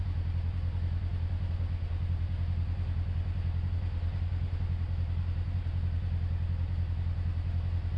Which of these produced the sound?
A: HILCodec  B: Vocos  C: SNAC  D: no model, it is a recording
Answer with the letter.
D